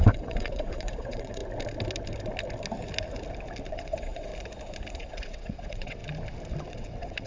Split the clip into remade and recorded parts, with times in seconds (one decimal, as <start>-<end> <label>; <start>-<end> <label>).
0.0-1.4 remade; 1.4-3.7 recorded; 3.7-4.3 remade; 4.3-5.0 recorded; 5.0-6.0 remade; 6.0-6.7 recorded; 6.7-7.3 remade